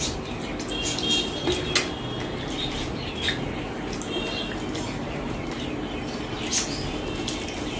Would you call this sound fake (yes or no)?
no